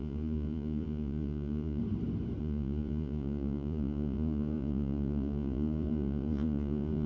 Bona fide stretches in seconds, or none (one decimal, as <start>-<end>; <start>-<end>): 1.8-2.4

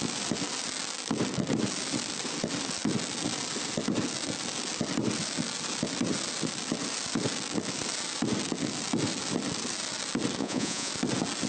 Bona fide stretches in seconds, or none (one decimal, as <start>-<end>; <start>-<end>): 0.0-10.4; 10.9-11.5

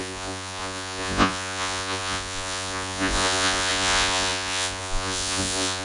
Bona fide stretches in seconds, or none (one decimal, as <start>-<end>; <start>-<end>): none

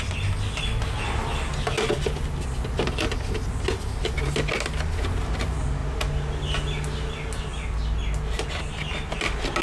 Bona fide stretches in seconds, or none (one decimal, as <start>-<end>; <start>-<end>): 0.0-9.6

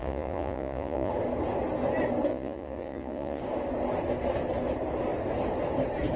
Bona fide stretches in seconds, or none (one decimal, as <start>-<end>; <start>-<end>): 1.1-2.3; 3.4-6.2

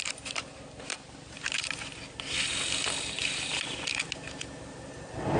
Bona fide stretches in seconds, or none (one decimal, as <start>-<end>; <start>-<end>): 0.0-5.4

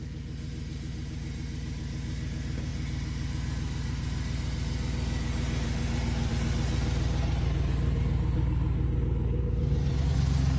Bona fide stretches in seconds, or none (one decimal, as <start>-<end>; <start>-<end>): 0.0-10.6